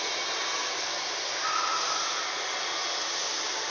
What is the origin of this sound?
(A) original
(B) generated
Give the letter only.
A